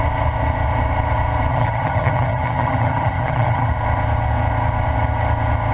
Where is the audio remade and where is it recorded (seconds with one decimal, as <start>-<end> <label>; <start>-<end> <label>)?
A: 0.0-1.5 recorded; 1.5-3.7 remade; 3.7-5.7 recorded